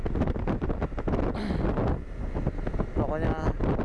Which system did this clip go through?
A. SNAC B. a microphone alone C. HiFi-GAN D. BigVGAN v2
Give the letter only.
B